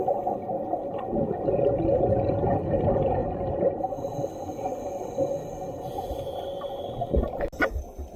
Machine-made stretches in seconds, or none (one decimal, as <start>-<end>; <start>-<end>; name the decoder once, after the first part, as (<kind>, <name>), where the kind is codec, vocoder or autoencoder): none